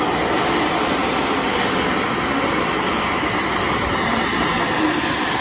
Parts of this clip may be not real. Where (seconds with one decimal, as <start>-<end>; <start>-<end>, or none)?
none